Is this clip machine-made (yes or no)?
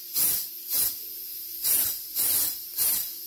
no